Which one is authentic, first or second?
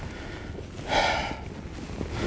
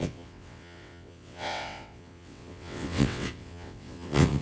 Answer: first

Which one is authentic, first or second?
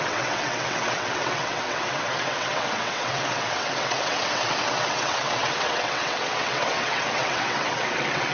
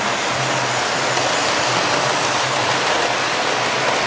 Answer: second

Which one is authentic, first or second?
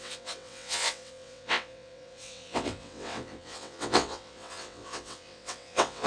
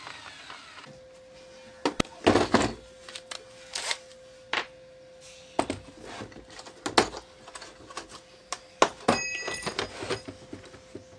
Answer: second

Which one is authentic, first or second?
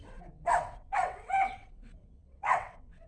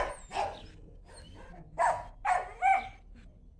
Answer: second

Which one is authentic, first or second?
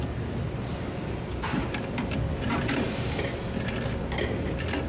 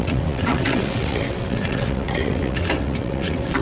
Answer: first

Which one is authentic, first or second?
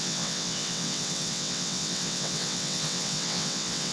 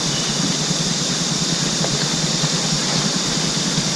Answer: second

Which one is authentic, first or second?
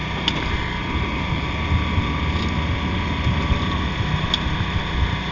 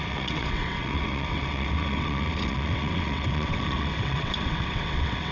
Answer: first